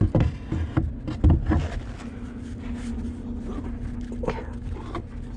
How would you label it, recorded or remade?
recorded